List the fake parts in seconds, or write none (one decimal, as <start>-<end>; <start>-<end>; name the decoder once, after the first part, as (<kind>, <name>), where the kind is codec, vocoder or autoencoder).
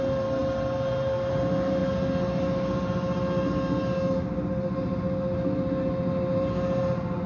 none